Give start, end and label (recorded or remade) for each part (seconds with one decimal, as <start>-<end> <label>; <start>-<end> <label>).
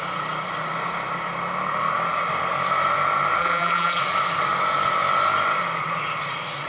0.0-3.4 recorded; 3.4-4.0 remade; 4.0-6.7 recorded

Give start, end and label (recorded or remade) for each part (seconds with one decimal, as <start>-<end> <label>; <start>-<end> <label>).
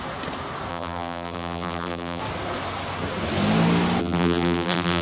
0.0-0.7 recorded; 0.7-2.2 remade; 2.2-4.0 recorded; 4.0-5.0 remade